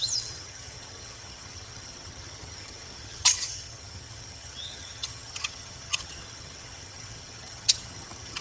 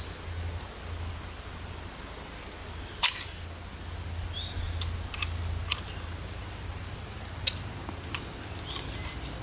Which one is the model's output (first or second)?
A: first